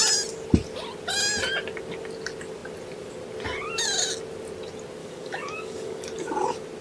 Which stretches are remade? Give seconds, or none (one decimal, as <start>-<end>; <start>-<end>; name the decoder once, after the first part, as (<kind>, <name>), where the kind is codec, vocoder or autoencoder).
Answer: 5.0-6.0 (codec, DAC)